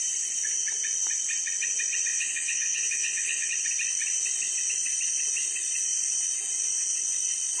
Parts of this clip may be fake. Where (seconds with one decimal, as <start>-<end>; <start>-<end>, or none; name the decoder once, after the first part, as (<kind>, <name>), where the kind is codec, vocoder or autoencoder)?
2.1-3.5 (vocoder, Vocos)